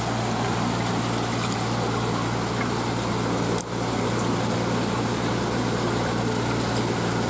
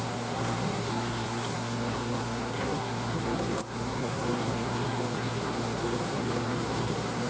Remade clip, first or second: second